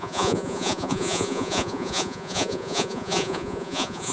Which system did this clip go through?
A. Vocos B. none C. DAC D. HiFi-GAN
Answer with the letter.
A